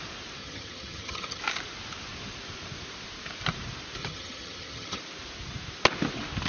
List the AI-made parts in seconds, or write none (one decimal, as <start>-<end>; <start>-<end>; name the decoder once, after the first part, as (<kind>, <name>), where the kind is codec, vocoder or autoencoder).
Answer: 0.4-1.4 (vocoder, HiFi-GAN); 4.0-5.0